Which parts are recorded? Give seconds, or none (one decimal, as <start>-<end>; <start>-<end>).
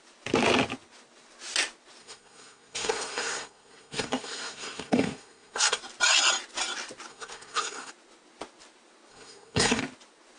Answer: 0.0-2.0; 5.8-7.1; 7.9-9.1; 9.8-10.4